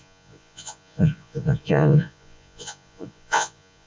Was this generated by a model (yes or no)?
yes